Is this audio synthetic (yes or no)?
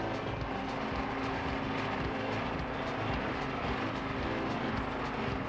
no